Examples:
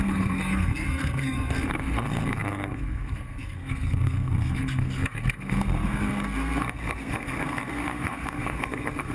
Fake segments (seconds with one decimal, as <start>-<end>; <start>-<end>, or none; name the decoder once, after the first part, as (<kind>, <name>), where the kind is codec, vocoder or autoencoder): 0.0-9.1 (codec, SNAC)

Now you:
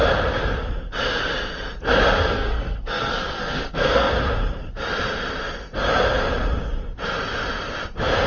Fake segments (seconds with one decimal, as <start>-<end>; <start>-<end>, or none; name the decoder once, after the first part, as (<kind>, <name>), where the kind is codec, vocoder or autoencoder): 2.2-4.1 (codec, SNAC)

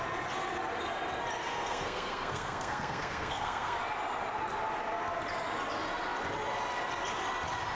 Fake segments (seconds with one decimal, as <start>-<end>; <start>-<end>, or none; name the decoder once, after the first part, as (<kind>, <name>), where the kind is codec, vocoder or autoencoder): 1.4-3.8 (codec, SNAC)

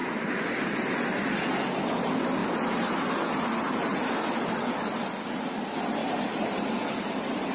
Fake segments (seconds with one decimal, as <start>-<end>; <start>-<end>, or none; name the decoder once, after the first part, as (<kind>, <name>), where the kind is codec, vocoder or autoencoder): none

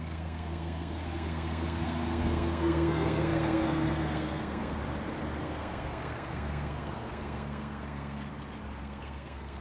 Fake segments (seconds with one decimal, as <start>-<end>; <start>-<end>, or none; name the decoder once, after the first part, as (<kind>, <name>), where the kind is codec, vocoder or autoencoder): 0.0-4.8 (codec, SNAC); 5.4-8.3; 8.8-9.6

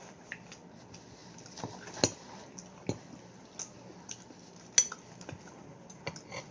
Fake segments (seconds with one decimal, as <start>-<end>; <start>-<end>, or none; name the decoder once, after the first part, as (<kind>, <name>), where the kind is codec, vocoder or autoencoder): none

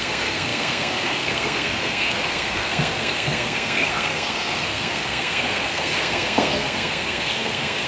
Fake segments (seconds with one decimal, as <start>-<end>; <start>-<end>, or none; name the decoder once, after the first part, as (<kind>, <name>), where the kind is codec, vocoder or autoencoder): 0.0-7.9 (codec, SNAC)